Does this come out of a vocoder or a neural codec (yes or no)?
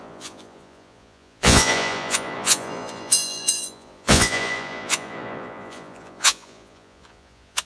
yes